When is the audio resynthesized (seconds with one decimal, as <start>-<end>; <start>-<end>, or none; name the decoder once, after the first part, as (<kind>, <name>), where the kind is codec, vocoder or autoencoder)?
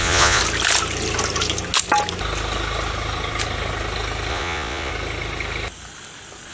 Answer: 0.0-0.4 (vocoder, Vocos); 4.3-4.9